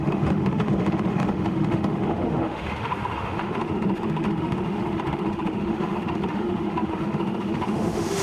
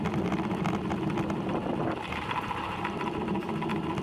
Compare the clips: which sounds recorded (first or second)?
second